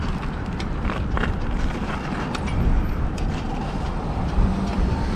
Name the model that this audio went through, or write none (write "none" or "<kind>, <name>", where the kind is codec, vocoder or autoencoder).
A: vocoder, BigVGAN v2